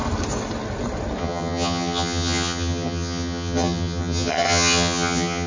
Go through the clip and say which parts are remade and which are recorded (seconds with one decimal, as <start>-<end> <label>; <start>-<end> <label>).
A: 0.0-1.2 recorded; 1.2-5.5 remade